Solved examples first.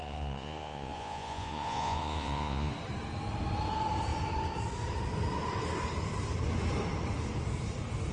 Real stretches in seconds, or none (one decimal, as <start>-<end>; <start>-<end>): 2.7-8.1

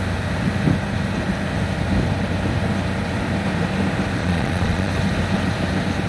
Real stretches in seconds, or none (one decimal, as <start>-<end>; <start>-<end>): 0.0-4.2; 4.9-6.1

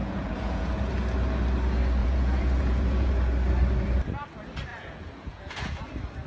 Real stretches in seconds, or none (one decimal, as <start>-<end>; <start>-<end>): 0.9-2.0; 3.1-4.7; 5.8-6.3